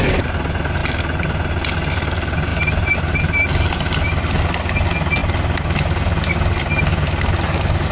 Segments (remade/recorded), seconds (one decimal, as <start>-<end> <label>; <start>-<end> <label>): 0.0-7.9 recorded